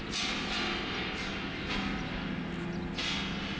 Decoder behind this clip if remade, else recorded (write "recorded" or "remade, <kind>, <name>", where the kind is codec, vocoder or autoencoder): recorded